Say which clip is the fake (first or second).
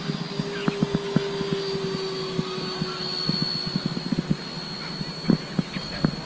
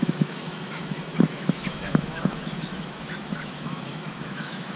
second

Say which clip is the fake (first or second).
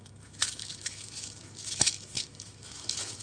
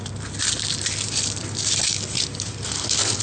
first